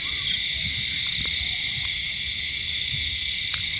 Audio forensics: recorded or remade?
recorded